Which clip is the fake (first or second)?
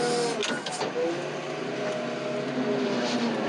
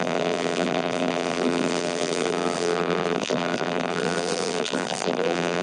second